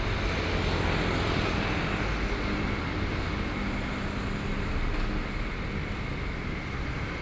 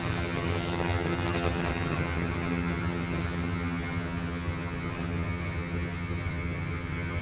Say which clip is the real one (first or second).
first